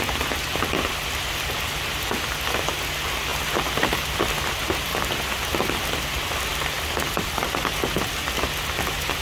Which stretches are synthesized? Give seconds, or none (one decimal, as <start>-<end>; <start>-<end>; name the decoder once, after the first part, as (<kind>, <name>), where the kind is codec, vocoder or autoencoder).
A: 3.3-4.2 (vocoder, BigVGAN v2); 6.5-7.7